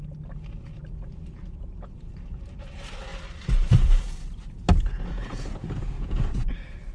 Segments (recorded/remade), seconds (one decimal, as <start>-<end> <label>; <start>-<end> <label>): 0.0-4.9 recorded; 4.9-6.5 remade; 6.5-6.9 recorded